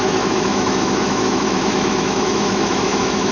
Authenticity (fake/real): fake